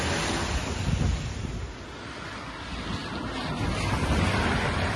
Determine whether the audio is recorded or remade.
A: recorded